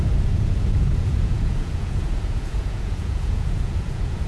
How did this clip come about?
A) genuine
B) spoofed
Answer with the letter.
B